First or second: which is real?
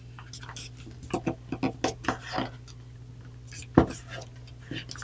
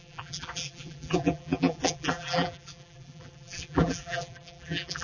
first